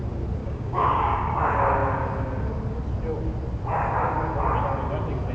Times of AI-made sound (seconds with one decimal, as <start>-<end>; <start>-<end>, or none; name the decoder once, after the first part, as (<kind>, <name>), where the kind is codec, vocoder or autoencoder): 0.4-1.3 (codec, DAC)